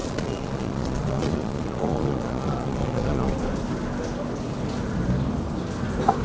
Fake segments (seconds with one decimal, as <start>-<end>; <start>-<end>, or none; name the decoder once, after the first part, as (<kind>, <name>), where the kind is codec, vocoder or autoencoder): 0.0-3.3 (vocoder, Vocos)

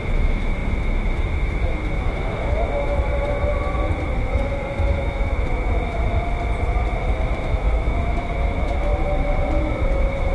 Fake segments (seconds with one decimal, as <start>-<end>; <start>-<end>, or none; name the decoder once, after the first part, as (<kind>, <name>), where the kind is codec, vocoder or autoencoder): 0.0-3.5 (autoencoder, DAC-VAE); 4.2-6.1; 7.3-8.9; 9.6-10.3

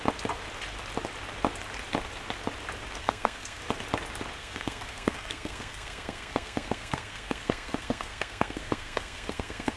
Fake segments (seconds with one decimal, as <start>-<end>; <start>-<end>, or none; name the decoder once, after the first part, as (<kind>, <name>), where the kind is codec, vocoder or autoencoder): 3.0-3.6 (codec, SNAC); 4.4-9.8

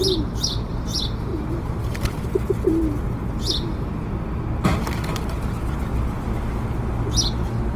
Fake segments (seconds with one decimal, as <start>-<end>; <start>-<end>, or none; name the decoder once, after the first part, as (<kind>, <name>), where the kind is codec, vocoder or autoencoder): 1.3-2.3 (vocoder, BigVGAN v2)

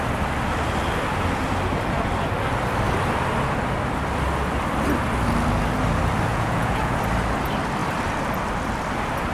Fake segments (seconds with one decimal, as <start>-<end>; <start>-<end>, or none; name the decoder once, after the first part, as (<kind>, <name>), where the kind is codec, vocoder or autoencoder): 6.3-7.0 (vocoder, Vocos)

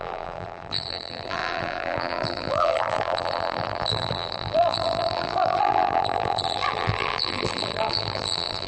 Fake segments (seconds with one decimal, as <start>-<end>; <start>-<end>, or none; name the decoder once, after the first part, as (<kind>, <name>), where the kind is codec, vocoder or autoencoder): 0.0-8.7 (vocoder, BigVGAN v2)